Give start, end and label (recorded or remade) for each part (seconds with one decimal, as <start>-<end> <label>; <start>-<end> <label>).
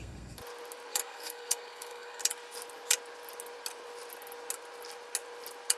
0.0-0.4 remade; 0.4-0.9 recorded; 0.9-2.2 remade; 2.2-5.8 recorded